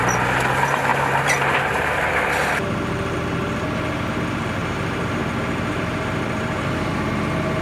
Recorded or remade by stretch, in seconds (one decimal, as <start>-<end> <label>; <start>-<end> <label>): 0.0-0.9 recorded; 0.9-2.1 remade; 2.1-4.6 recorded; 4.6-6.7 remade; 6.7-7.6 recorded